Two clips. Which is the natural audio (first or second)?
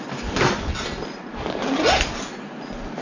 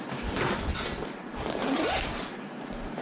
first